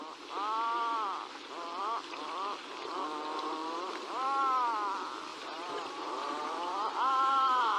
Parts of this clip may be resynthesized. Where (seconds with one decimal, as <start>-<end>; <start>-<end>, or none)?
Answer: 3.6-4.2; 5.3-7.8